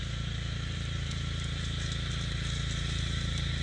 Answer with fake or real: fake